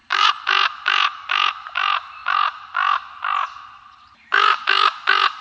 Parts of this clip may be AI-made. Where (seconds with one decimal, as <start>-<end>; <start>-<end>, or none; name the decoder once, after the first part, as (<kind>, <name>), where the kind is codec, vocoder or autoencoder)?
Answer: 0.0-0.5 (vocoder, BigVGAN v2)